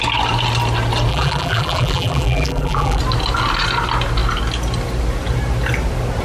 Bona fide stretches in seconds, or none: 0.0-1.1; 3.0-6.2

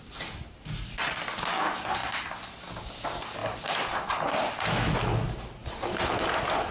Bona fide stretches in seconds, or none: 0.0-2.0; 2.8-3.4; 4.5-5.6

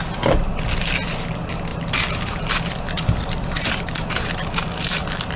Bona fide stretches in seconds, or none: 0.0-1.7; 4.3-5.4

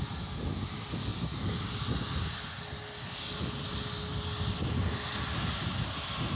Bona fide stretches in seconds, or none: 0.0-6.4

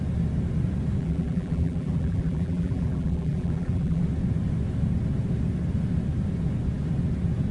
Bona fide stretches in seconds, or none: 0.0-1.0; 4.0-7.5

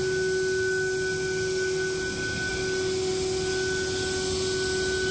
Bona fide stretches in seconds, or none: 0.0-5.1

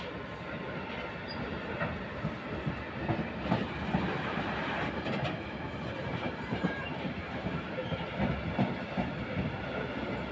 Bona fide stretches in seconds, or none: 0.0-6.1; 7.5-10.3

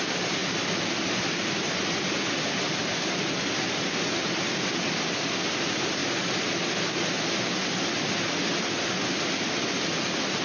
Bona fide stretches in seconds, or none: 0.0-10.4